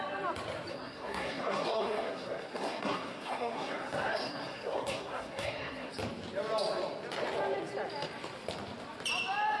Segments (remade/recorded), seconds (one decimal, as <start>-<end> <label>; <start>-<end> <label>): 0.0-0.7 recorded; 0.7-5.9 remade; 5.9-9.6 recorded